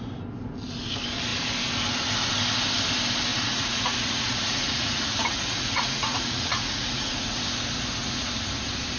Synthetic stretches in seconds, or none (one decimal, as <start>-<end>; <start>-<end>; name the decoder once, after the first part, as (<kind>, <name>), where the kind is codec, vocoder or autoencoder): 3.3-7.4 (vocoder, Vocos); 8.0-8.6